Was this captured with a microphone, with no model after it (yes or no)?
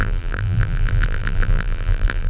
no